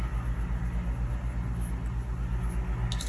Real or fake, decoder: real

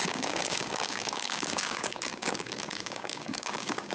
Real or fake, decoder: fake, codec, DAC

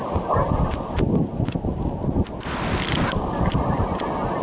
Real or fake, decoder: real